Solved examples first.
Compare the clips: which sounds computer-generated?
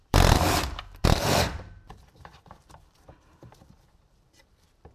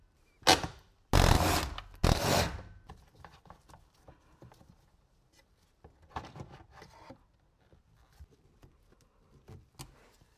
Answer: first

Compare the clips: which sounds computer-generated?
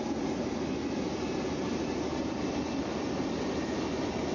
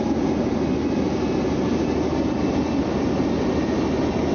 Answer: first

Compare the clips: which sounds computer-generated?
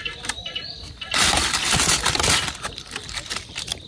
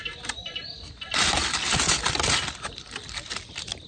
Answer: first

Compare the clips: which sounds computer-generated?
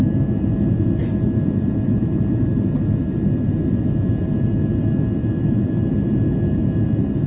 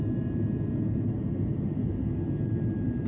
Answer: first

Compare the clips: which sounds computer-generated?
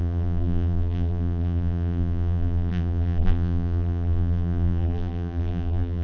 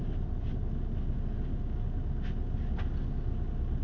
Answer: first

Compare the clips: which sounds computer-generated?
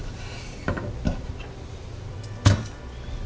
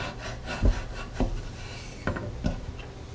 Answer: first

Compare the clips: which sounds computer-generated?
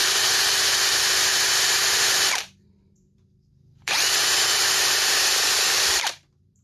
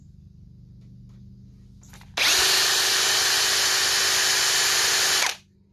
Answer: first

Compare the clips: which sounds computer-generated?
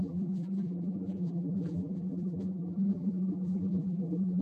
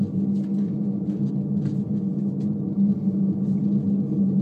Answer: first